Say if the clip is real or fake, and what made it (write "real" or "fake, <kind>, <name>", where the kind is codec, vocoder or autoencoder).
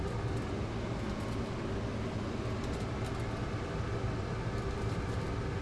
real